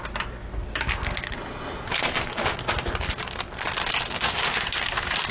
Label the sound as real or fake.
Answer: real